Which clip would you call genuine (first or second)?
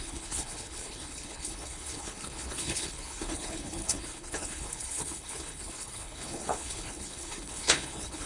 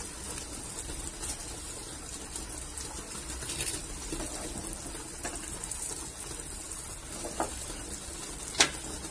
second